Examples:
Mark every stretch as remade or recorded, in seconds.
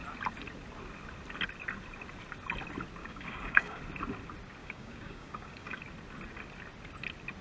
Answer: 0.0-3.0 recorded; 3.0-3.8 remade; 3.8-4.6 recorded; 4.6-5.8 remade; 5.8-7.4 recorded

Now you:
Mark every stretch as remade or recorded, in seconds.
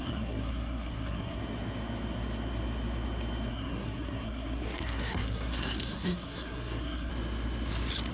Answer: 0.0-1.4 remade; 1.4-3.5 recorded; 3.5-7.1 remade; 7.1-8.1 recorded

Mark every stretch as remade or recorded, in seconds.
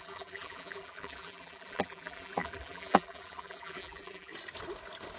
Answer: 0.0-4.3 remade; 4.3-5.2 recorded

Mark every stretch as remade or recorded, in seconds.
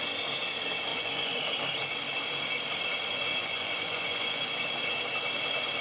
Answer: 0.0-0.9 recorded; 0.9-1.4 remade; 1.4-3.1 recorded; 3.1-4.6 remade; 4.6-5.8 recorded